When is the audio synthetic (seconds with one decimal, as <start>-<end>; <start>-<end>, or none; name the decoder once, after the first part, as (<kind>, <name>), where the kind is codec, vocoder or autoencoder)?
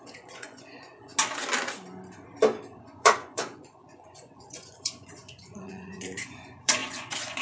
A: 0.0-1.1 (vocoder, Vocos); 2.8-7.4